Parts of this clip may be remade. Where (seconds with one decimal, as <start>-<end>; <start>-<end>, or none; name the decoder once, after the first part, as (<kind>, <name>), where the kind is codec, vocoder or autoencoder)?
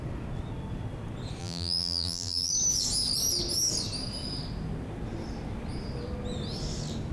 1.4-2.5 (vocoder, BigVGAN v2)